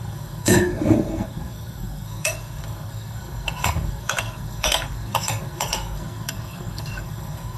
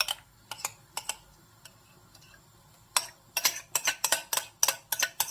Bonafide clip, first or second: second